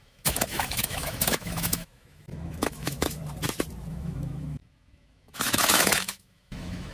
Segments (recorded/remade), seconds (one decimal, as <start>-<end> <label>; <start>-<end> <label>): 0.0-3.2 remade; 3.2-3.9 recorded; 3.9-6.9 remade